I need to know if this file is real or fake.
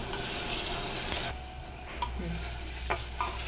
real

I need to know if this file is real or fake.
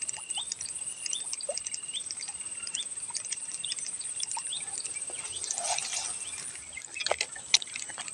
real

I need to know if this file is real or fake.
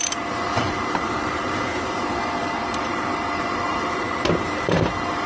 fake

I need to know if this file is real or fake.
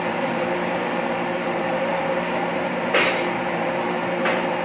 fake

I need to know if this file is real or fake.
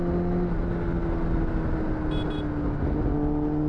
real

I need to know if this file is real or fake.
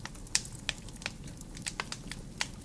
real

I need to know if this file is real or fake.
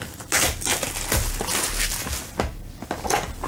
real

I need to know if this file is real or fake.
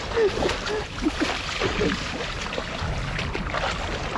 real